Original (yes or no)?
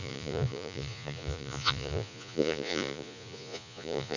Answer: no